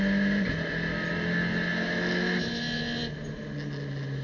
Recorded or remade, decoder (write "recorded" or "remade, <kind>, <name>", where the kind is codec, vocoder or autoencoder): recorded